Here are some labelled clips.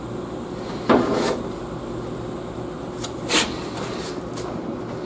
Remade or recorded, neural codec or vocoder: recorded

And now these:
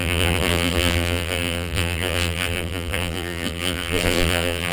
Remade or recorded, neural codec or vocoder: remade, vocoder, BigVGAN v2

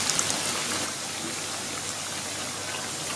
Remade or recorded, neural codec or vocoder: recorded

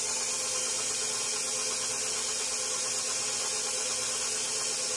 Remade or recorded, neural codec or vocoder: recorded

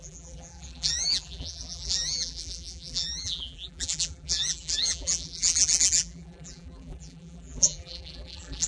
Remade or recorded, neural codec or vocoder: remade, vocoder, BigVGAN v2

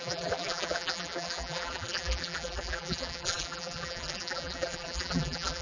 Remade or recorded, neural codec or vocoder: remade, vocoder, BigVGAN v2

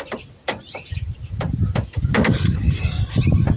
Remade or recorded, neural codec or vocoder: remade, vocoder, BigVGAN v2